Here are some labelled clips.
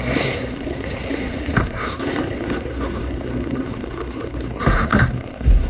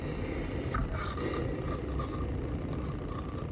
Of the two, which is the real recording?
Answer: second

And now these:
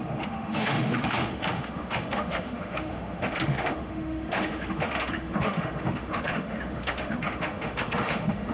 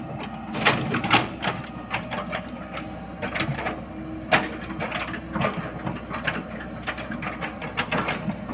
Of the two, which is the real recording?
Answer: second